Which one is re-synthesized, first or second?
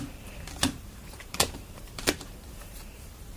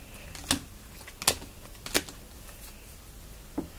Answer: first